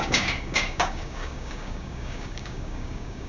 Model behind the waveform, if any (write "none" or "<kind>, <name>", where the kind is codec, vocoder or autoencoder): codec, DAC